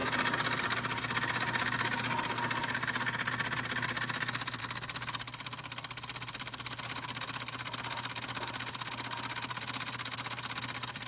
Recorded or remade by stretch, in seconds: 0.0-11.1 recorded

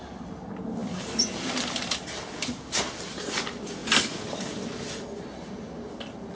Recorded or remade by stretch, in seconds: 0.0-6.3 recorded

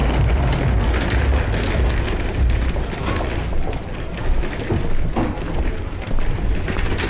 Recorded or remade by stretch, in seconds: 0.0-7.1 recorded

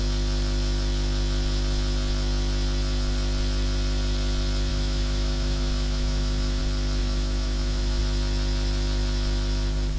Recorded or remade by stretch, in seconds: 0.0-4.7 recorded; 4.7-6.6 remade; 6.6-7.0 recorded; 7.0-8.0 remade; 8.0-10.0 recorded

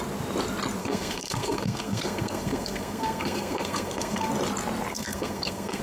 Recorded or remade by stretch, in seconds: 0.0-0.8 recorded; 0.8-4.3 remade; 4.3-4.9 recorded; 4.9-5.8 remade

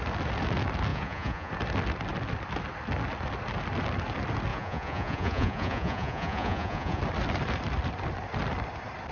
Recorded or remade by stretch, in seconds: 0.0-0.9 recorded; 0.9-1.5 remade; 1.5-4.5 recorded; 4.5-7.0 remade; 7.0-9.1 recorded

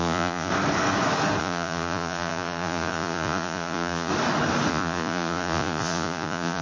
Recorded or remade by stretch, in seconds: 0.0-0.5 remade; 0.5-1.4 recorded; 1.4-4.1 remade; 4.1-4.7 recorded; 4.7-6.6 remade